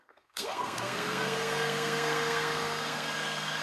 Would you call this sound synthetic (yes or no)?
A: yes